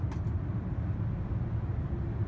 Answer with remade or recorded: recorded